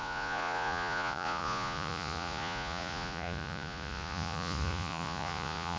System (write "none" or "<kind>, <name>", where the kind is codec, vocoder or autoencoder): vocoder, Vocos